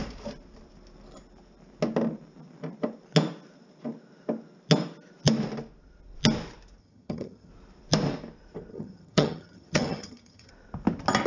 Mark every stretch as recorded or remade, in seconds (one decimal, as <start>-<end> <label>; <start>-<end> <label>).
0.0-6.8 recorded; 6.8-7.5 remade; 7.5-8.7 recorded; 8.7-10.5 remade; 10.5-11.3 recorded